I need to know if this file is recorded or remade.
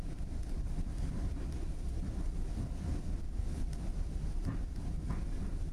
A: recorded